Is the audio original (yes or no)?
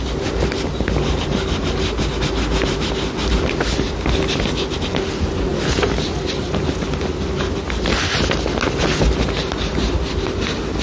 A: yes